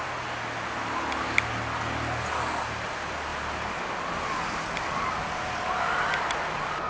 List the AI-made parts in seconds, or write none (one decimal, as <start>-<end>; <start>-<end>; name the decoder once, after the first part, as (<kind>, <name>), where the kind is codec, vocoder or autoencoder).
none